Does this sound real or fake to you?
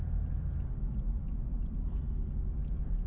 real